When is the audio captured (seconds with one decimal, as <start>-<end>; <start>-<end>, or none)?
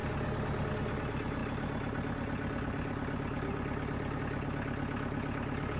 0.0-5.8